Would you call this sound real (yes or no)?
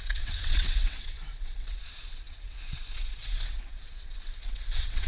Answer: no